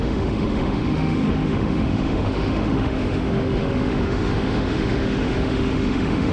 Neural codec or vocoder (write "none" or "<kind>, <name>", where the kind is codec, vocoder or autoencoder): autoencoder, DAC-VAE